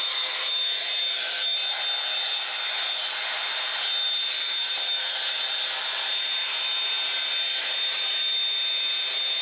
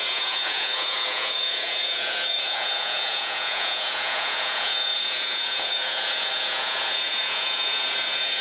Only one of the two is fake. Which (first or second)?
second